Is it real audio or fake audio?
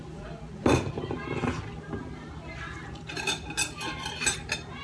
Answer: real